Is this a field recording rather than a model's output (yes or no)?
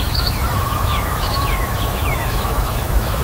no